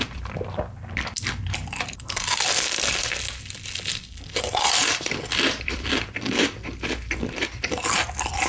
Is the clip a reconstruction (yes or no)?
yes